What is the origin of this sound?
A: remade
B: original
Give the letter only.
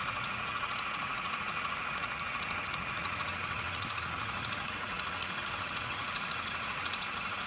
A